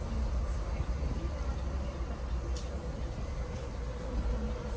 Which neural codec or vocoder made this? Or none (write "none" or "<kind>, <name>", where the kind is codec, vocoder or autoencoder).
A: none